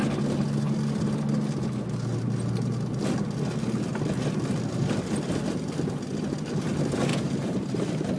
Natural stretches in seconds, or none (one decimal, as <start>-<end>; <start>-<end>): 0.0-7.1